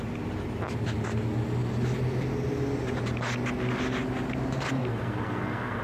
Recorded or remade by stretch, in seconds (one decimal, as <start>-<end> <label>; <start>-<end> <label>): 0.0-4.8 recorded; 4.8-5.8 remade